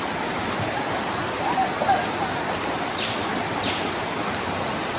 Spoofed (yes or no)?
no